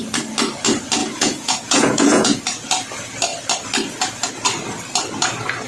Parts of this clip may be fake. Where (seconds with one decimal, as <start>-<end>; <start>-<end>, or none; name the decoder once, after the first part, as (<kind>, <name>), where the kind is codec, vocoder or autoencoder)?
1.0-2.4 (vocoder, Vocos)